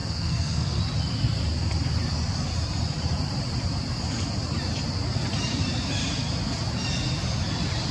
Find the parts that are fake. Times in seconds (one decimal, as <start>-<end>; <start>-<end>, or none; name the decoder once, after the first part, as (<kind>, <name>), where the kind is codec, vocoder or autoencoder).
0.0-0.8 (codec, SNAC)